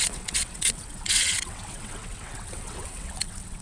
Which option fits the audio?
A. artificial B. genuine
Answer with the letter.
A